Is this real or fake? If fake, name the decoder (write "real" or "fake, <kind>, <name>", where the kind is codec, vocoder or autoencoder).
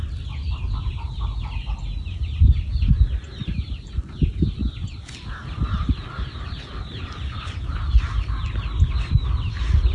real